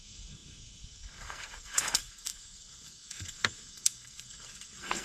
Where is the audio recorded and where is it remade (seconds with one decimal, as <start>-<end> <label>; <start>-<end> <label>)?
0.0-5.0 remade